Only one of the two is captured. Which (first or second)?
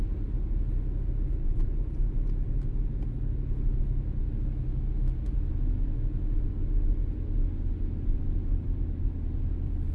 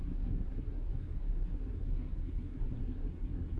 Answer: first